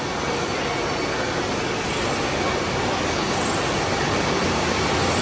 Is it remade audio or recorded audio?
recorded